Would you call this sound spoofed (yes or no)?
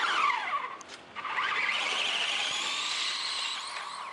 yes